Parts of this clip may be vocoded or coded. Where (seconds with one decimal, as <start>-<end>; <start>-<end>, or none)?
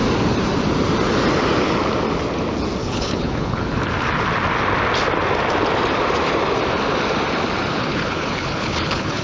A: 2.8-3.8; 7.7-9.2